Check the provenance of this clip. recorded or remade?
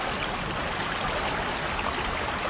recorded